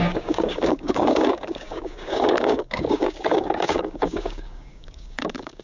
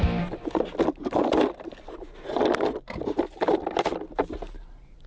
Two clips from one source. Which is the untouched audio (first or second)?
second